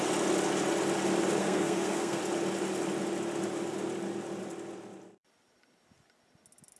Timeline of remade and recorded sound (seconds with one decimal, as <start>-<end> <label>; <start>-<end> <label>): 0.0-1.4 recorded; 1.4-2.2 remade; 2.2-6.8 recorded